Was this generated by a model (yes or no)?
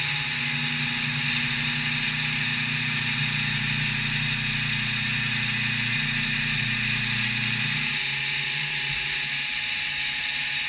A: no